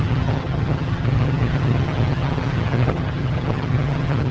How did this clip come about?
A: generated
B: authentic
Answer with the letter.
A